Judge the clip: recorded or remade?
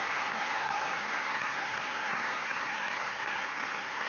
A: remade